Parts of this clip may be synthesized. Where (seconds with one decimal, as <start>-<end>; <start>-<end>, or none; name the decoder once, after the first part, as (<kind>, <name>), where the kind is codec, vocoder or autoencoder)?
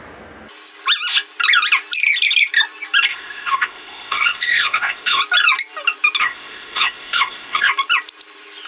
3.1-5.2 (codec, ZipCodec); 6.2-7.7